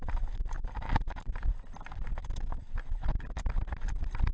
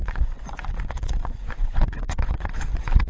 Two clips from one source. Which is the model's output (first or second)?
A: second